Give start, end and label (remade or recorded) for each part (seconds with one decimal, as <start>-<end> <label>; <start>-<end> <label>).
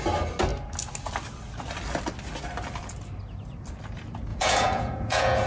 0.0-4.3 recorded; 4.3-5.5 remade